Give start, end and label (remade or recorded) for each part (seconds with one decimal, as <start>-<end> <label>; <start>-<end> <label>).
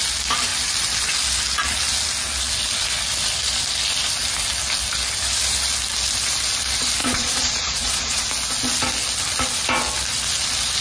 0.0-7.0 recorded; 7.0-8.3 remade; 8.3-10.8 recorded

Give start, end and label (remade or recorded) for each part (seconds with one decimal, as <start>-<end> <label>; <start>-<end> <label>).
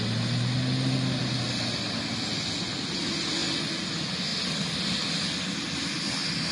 0.0-6.5 recorded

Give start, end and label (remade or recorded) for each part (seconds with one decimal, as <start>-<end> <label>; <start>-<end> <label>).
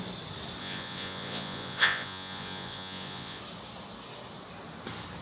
0.0-0.6 recorded; 0.6-3.4 remade; 3.4-5.2 recorded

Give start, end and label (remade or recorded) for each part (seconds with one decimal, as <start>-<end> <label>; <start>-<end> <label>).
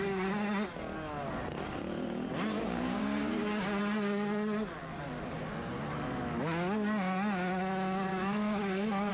0.0-2.5 recorded; 2.5-3.8 remade; 3.8-8.1 recorded; 8.1-9.1 remade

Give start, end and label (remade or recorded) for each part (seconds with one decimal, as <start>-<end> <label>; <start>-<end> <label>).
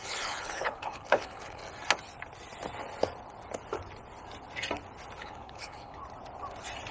0.0-1.6 remade; 1.6-5.2 recorded; 5.2-6.0 remade; 6.0-6.9 recorded